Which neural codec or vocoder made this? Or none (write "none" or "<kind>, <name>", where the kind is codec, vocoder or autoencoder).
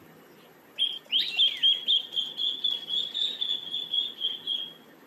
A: none